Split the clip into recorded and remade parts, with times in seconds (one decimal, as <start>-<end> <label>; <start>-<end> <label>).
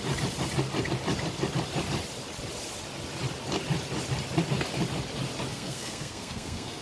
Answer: 0.0-5.5 recorded; 5.5-6.8 remade